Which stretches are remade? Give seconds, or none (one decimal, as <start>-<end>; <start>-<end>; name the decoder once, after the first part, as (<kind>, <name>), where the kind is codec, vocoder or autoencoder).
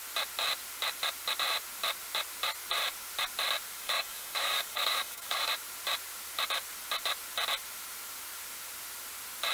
3.8-5.5 (codec, DAC)